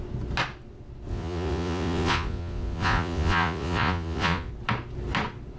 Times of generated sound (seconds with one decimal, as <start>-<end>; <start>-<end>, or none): 1.1-4.5